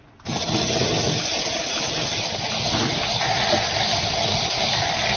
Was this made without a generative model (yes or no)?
yes